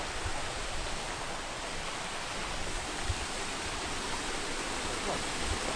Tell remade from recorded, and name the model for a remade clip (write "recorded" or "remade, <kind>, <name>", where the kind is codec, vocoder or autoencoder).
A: recorded